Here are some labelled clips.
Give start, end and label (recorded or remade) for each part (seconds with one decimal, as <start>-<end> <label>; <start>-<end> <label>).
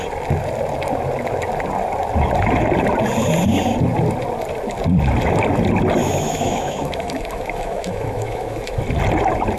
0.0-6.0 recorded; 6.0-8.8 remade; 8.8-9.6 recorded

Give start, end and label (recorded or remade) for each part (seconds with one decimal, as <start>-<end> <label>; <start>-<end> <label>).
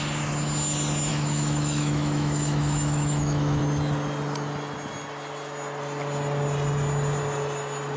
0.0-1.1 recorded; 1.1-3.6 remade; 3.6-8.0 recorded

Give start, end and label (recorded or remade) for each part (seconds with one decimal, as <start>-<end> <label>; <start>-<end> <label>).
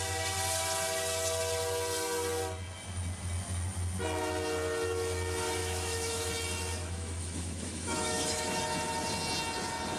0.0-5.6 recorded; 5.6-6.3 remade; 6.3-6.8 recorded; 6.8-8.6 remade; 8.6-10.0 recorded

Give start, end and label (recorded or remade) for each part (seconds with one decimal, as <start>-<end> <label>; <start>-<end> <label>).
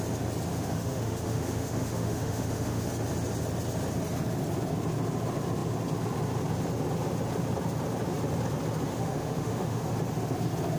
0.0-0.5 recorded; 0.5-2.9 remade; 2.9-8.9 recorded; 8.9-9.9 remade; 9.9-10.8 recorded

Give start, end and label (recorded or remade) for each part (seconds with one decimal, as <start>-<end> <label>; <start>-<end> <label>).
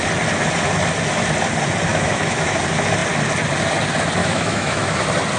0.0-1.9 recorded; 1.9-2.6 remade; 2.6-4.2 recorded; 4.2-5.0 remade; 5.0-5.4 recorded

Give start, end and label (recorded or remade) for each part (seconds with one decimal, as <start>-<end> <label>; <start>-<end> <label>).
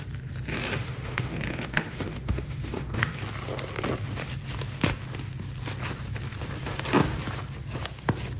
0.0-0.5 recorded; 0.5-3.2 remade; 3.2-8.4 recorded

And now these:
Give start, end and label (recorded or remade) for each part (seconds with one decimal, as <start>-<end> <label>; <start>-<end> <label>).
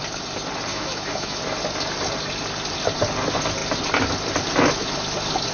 0.0-0.7 recorded; 0.7-1.4 remade; 1.4-5.5 recorded